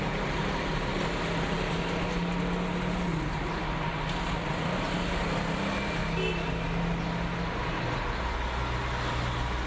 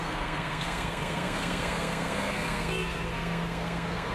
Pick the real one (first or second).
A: first